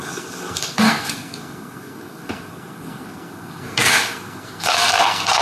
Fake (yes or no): yes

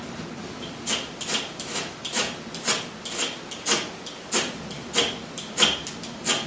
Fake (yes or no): no